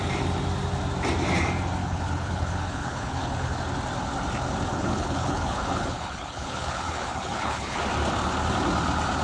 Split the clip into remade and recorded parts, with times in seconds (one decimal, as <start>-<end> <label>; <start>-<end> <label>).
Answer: 0.0-1.8 recorded; 1.8-3.6 remade; 3.6-4.7 recorded; 4.7-7.8 remade; 7.8-9.2 recorded